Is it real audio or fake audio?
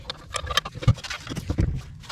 real